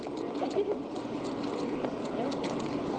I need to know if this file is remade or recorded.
recorded